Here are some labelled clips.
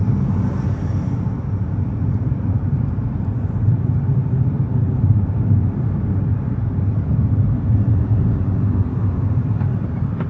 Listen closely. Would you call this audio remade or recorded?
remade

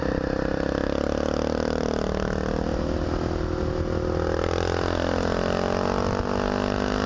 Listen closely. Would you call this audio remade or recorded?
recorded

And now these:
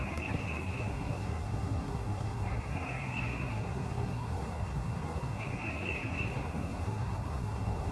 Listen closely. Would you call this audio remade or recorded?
remade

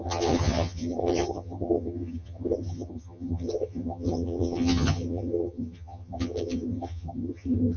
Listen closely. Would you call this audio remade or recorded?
remade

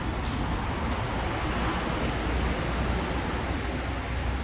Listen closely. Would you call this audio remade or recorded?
recorded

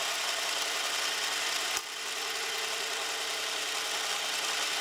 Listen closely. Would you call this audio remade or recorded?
recorded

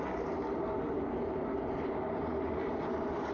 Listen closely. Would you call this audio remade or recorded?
remade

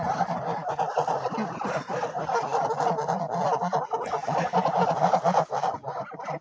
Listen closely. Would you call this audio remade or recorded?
recorded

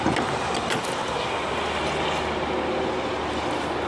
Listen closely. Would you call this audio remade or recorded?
recorded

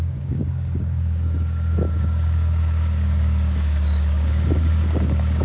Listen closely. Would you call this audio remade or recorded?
remade